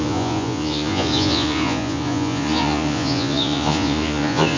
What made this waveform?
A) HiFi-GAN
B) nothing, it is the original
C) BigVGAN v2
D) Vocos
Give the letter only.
D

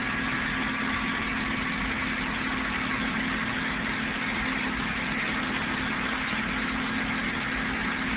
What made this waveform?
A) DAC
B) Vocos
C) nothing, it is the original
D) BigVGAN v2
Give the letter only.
C